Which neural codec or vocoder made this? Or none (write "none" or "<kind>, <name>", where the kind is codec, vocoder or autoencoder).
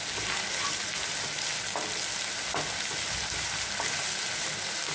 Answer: none